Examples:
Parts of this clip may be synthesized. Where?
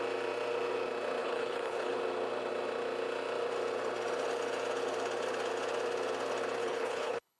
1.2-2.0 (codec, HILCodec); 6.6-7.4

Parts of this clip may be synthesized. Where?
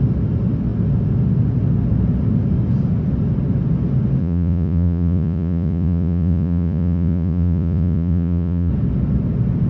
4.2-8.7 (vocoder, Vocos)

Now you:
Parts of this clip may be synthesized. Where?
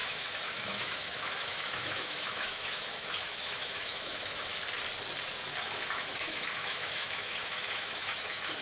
0.0-4.5 (autoencoder, DAC-VAE); 5.6-8.6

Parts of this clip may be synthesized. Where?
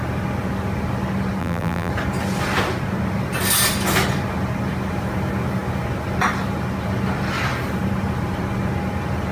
1.4-1.9 (vocoder, BigVGAN v2)